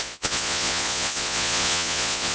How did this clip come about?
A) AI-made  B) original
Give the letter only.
A